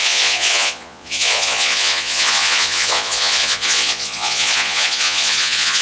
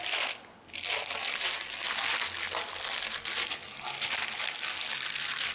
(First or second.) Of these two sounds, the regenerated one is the first